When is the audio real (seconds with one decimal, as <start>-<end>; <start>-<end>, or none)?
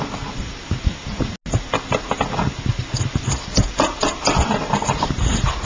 0.0-3.4